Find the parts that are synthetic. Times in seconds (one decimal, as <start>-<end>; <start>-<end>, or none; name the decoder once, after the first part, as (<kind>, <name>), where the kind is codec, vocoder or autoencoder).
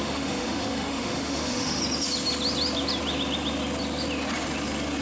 0.0-1.8 (autoencoder, DAC-VAE)